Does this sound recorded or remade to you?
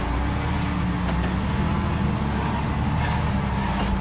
recorded